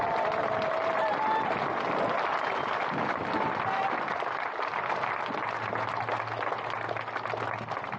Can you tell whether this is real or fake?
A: real